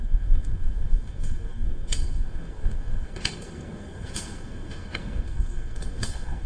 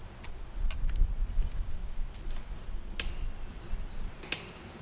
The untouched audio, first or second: second